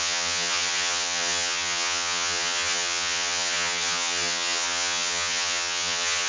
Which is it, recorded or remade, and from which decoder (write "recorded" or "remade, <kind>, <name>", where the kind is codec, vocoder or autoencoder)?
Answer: remade, vocoder, HiFi-GAN